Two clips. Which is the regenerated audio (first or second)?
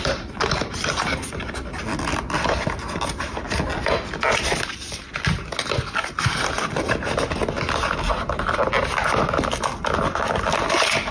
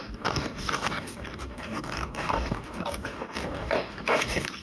second